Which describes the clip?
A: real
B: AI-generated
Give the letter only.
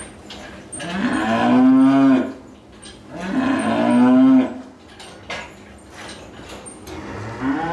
A